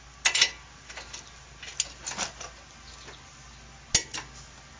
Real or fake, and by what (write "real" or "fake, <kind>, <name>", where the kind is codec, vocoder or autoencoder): real